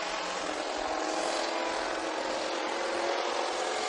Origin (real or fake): real